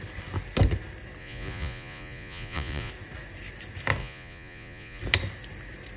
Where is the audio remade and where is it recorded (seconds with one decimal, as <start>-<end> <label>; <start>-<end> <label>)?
0.0-1.2 recorded; 1.2-2.9 remade; 2.9-4.0 recorded; 4.0-5.0 remade; 5.0-6.0 recorded